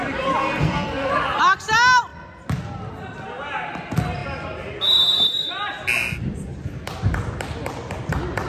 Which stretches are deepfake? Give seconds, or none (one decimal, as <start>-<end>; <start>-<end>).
0.4-1.1